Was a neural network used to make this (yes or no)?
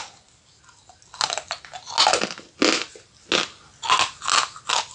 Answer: no